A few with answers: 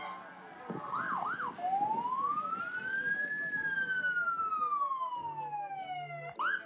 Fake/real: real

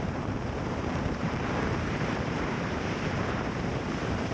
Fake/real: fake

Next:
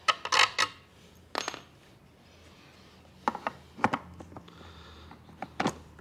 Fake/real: real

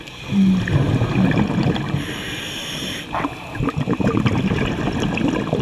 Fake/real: real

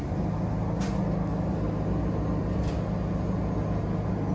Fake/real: real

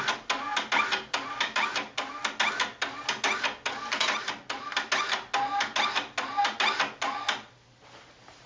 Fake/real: real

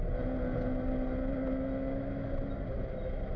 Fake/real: real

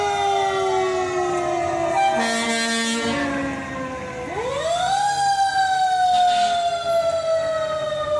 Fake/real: real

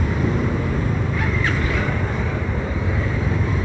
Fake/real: fake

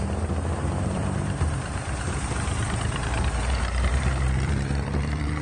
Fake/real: fake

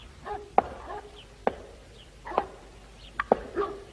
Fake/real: fake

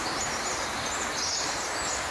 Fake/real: fake